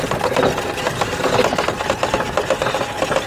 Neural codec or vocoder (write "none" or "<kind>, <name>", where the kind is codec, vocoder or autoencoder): none